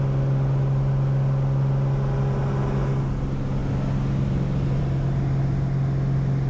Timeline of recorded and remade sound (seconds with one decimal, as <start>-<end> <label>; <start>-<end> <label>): 0.0-6.5 recorded